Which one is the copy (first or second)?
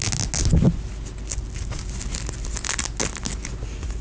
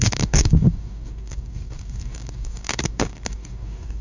second